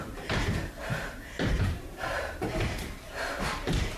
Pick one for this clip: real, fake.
fake